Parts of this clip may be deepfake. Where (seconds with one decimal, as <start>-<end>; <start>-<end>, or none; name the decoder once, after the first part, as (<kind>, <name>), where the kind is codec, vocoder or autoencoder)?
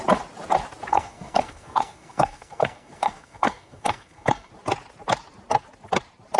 0.9-4.5 (codec, SNAC)